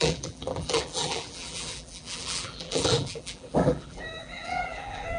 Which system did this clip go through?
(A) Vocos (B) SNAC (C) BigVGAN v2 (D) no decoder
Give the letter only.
C